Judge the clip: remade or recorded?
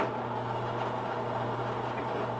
recorded